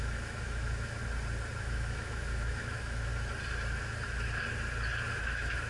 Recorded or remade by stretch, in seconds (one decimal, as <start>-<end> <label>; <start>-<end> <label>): 0.0-1.0 remade; 1.0-1.6 recorded; 1.6-3.1 remade; 3.1-5.2 recorded; 5.2-5.7 remade